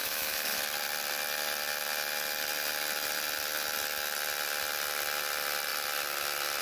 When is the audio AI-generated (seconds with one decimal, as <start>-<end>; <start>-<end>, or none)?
0.0-0.6